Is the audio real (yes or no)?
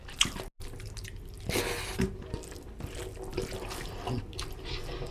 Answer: yes